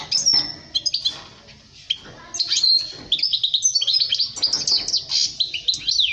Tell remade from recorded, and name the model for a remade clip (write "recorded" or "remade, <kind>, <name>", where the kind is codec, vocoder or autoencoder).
recorded